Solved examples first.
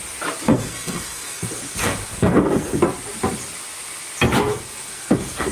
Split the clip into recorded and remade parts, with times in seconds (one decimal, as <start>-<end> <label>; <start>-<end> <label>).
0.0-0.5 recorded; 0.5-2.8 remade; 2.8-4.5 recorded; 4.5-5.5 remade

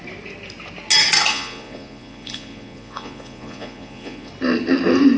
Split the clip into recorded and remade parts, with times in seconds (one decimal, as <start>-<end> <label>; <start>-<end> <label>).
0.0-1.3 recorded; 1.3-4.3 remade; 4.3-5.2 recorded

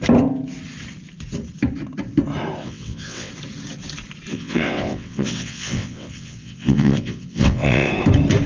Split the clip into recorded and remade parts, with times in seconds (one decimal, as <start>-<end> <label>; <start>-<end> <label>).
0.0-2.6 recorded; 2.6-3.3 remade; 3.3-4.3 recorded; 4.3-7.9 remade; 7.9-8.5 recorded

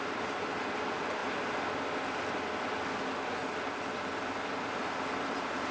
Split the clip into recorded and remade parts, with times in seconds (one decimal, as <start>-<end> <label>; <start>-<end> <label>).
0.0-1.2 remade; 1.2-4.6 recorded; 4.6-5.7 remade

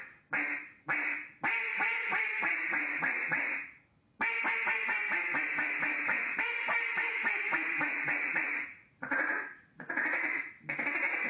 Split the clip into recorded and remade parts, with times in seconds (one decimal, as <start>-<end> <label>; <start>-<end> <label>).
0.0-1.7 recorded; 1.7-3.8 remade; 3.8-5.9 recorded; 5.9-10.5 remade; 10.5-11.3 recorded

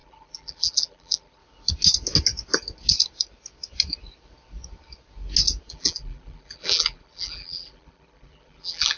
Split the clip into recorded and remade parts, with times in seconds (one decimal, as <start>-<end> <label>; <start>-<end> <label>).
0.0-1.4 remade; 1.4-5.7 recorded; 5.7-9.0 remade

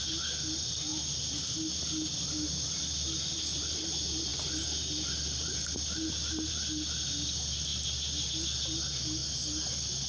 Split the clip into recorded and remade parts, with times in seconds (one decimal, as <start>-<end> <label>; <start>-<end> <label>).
0.0-10.1 recorded

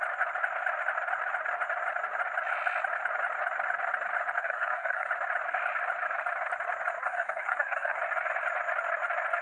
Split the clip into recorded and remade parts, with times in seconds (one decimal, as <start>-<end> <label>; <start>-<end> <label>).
0.0-4.4 recorded; 4.4-5.1 remade; 5.1-7.0 recorded; 7.0-8.0 remade; 8.0-9.4 recorded